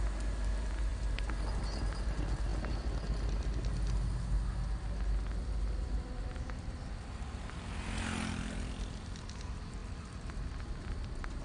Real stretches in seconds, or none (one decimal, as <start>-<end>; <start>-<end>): 0.0-9.8; 10.5-11.4